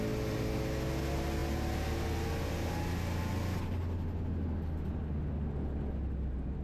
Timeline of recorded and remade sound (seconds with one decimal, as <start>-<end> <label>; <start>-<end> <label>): 0.0-6.6 recorded